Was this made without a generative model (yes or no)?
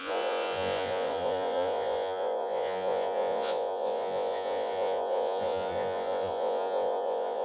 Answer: no